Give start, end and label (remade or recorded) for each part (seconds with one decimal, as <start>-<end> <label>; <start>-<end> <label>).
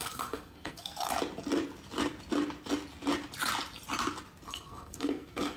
0.0-1.1 remade; 1.1-4.5 recorded; 4.5-5.6 remade